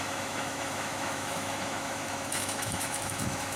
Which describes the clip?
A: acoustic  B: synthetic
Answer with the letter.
B